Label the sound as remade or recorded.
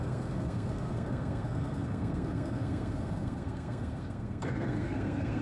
remade